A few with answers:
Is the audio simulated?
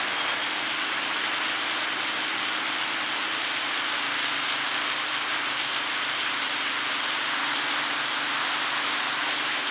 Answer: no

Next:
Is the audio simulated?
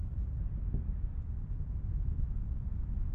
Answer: no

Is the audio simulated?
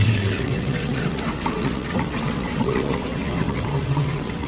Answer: yes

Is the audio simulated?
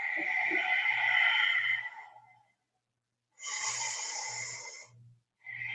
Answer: no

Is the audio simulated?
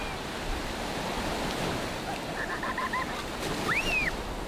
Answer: no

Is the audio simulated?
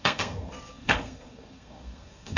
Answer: yes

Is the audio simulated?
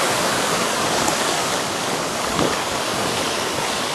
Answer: yes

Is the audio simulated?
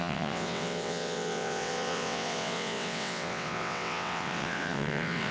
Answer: yes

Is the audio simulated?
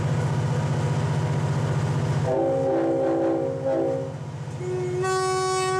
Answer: no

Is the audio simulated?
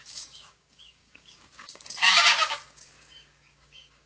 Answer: yes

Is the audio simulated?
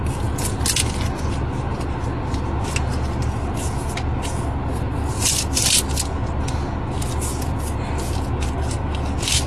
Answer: no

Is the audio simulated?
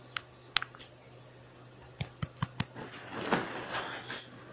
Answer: no